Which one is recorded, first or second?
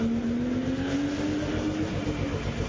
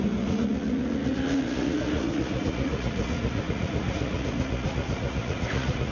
first